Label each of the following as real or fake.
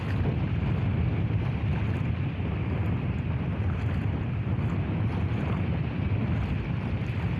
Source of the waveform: real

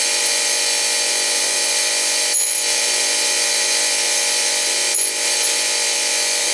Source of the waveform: fake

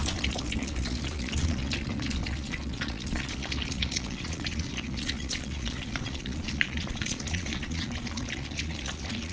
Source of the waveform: fake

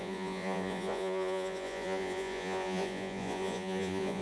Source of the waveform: fake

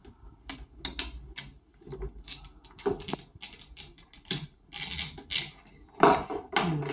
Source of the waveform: real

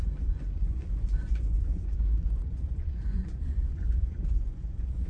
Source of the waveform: fake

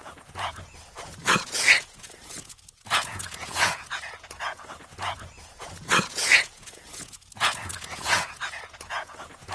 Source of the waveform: fake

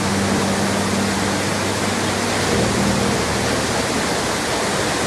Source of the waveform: real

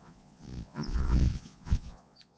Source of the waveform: fake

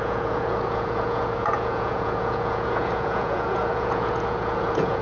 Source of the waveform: fake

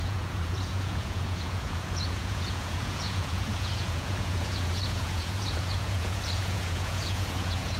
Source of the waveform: fake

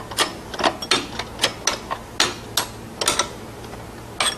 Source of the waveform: real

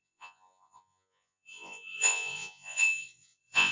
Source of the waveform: fake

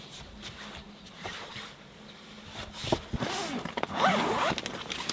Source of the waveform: real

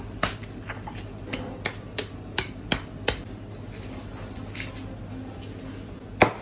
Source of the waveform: real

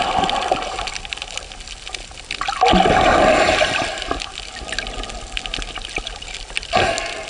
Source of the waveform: real